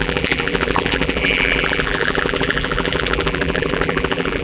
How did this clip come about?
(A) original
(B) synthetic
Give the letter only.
B